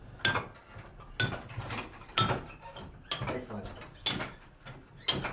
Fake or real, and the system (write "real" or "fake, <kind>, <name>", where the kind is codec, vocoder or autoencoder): real